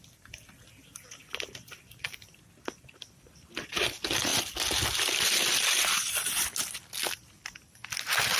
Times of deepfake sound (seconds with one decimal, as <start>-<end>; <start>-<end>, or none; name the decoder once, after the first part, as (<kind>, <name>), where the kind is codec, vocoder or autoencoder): none